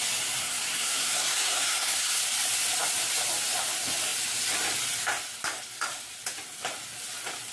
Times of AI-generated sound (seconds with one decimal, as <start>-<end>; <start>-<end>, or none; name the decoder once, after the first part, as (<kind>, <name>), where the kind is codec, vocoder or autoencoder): 0.4-2.2 (codec, SNAC)